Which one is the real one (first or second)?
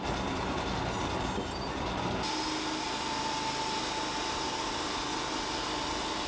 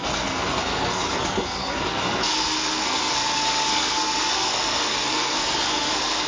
first